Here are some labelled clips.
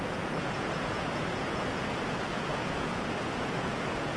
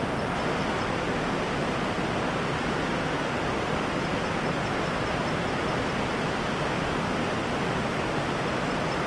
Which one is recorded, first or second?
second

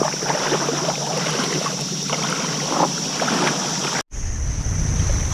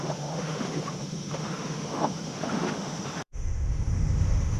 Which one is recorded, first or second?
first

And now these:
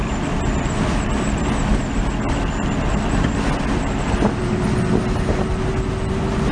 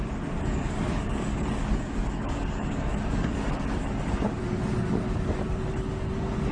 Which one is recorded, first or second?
first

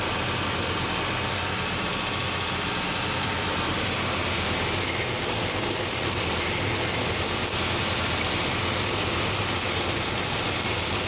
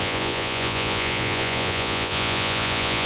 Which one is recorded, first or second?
first